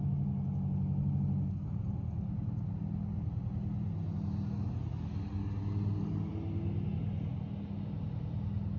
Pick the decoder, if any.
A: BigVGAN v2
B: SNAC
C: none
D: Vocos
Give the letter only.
C